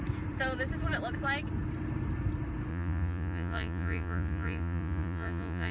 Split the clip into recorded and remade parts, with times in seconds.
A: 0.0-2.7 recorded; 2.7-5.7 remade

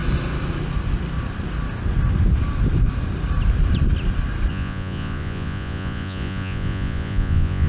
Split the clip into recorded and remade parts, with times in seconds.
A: 0.0-4.5 recorded; 4.5-7.7 remade